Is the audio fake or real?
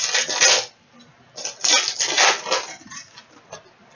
real